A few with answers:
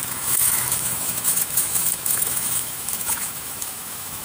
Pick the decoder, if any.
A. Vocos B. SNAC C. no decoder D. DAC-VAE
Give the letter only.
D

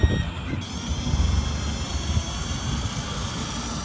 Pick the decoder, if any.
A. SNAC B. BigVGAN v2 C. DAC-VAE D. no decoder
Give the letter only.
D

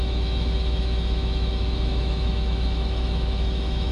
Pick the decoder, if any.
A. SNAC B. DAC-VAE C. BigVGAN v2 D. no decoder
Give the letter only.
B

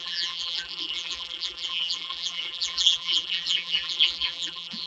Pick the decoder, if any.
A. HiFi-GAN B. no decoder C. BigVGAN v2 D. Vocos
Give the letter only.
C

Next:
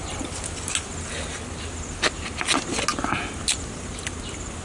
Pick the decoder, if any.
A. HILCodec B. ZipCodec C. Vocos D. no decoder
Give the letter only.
D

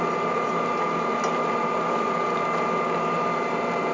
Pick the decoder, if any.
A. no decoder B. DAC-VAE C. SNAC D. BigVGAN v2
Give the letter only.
A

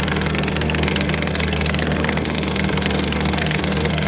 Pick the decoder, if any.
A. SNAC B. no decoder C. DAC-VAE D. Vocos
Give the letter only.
A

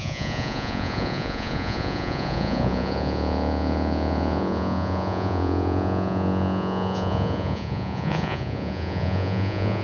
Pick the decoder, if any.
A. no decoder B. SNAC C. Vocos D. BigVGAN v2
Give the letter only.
C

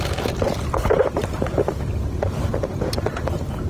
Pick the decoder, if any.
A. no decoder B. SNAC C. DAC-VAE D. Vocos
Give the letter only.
A